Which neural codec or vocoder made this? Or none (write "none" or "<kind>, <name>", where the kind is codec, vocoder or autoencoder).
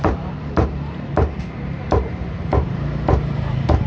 vocoder, BigVGAN v2